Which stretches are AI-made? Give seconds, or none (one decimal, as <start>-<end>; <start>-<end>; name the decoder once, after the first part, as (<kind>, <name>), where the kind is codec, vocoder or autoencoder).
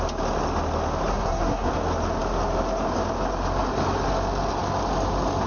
1.1-1.7 (codec, SNAC)